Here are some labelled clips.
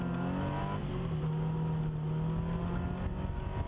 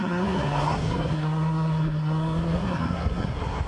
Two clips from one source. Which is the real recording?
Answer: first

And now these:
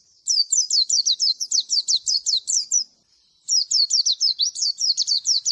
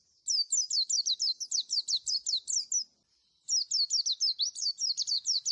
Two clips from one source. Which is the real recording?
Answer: second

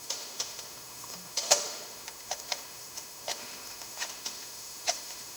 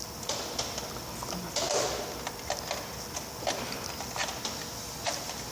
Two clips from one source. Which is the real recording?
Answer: second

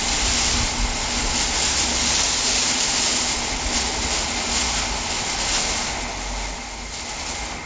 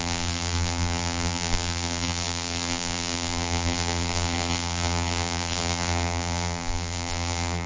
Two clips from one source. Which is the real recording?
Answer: first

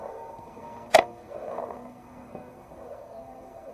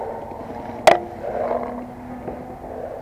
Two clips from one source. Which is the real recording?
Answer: second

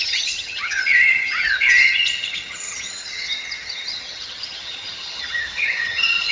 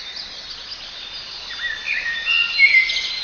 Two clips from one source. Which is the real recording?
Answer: second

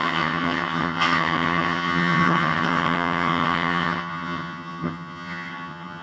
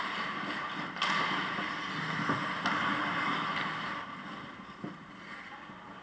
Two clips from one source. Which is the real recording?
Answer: second